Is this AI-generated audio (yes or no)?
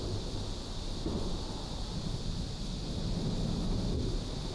no